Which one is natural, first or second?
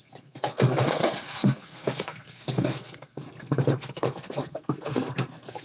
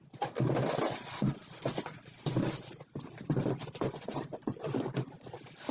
second